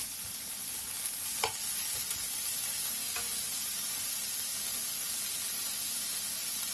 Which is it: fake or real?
real